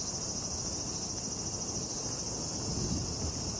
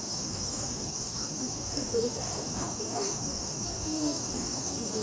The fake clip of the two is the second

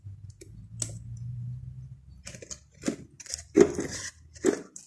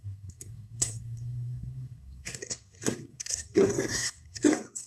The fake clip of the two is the second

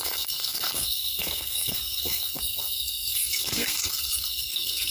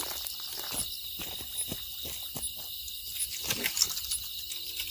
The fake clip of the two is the first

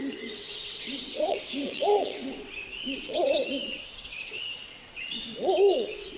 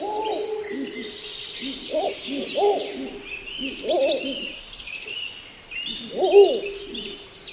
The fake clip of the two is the first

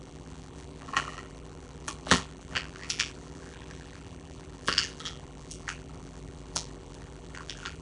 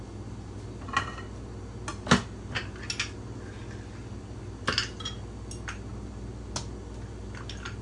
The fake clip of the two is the first